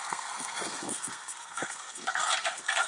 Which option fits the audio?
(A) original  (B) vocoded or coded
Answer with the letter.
B